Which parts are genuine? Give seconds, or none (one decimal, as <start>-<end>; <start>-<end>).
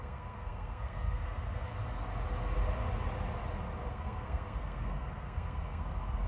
1.7-3.9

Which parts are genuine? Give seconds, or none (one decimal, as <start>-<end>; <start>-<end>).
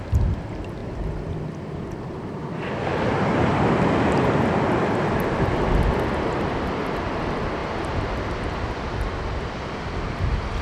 0.0-7.6; 8.3-10.6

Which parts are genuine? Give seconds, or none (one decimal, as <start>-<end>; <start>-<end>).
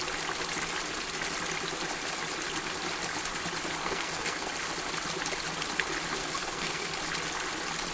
0.0-3.8; 4.5-6.2; 6.9-7.9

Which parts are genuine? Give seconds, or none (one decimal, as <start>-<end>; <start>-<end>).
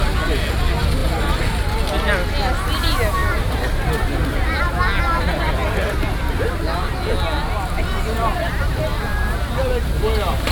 0.0-3.2; 4.7-10.5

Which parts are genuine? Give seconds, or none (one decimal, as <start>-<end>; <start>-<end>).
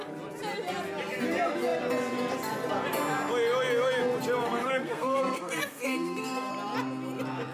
0.0-4.6; 6.5-7.5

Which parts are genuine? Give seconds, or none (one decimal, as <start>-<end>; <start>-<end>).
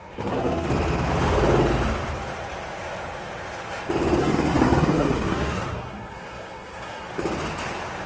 0.7-4.2; 7.1-8.1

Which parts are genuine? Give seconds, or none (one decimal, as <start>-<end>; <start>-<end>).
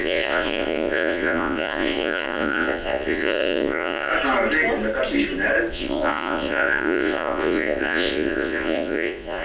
4.1-5.7